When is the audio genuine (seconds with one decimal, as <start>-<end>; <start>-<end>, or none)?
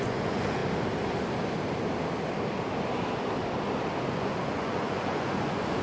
0.6-4.1